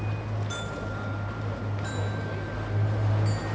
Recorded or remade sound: recorded